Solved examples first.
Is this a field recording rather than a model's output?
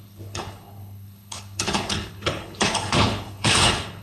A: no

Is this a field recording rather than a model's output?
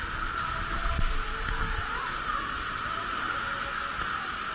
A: yes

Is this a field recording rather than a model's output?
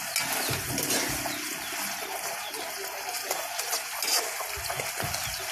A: yes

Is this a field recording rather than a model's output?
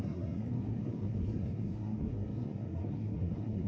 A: no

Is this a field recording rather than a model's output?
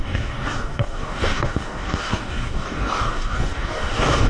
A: no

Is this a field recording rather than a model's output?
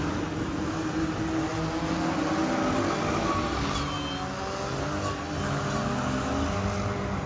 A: yes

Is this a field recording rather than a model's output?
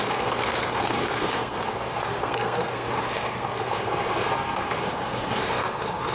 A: no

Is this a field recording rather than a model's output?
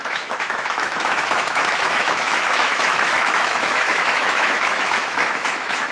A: no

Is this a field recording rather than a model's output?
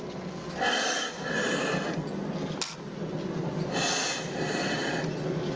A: yes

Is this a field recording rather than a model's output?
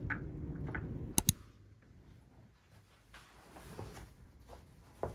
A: yes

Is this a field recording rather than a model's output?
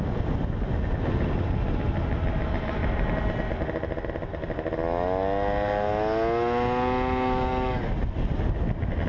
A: yes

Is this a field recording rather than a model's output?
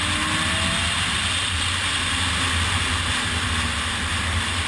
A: yes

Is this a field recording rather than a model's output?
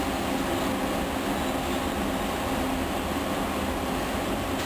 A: yes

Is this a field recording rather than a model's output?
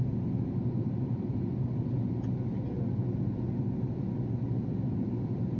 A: yes